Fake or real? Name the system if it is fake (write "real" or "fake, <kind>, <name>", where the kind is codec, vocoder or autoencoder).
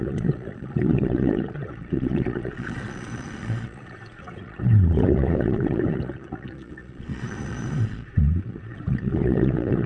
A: fake, vocoder, Vocos